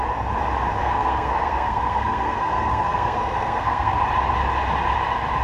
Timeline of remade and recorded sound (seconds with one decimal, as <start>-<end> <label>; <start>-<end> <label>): 0.0-0.8 recorded; 0.8-4.0 remade; 4.0-5.4 recorded